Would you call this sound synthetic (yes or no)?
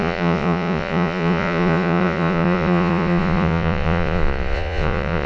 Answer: yes